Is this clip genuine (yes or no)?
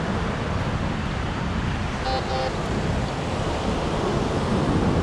yes